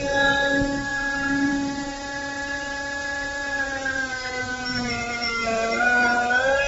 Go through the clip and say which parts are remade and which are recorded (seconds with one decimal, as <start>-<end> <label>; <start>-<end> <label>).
0.0-0.9 recorded; 0.9-4.9 remade; 4.9-6.7 recorded